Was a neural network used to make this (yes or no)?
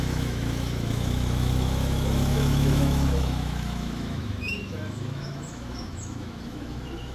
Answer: yes